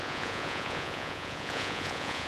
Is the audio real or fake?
fake